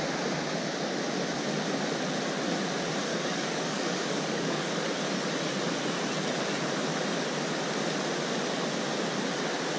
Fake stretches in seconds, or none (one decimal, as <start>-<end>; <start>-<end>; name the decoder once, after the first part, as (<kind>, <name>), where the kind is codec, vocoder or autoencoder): 3.1-4.8 (codec, DAC)